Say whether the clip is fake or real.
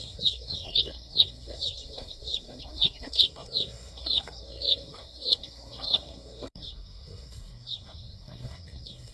fake